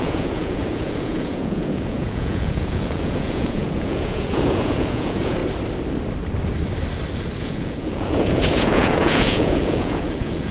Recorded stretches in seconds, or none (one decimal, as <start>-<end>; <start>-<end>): 5.4-7.4